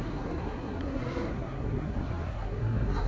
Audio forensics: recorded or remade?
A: remade